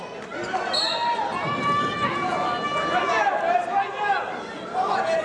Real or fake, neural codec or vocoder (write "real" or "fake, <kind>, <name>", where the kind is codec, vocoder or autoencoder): real